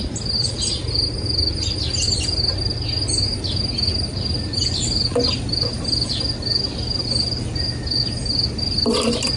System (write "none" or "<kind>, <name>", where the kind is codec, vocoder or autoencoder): none